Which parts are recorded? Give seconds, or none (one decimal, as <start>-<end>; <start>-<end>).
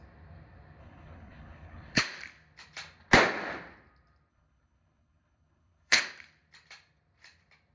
0.0-0.8; 2.0-4.3; 6.0-7.7